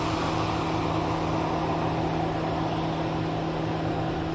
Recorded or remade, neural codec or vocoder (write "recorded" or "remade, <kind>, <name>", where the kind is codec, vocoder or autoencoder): recorded